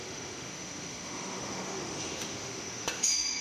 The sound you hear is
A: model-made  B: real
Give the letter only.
A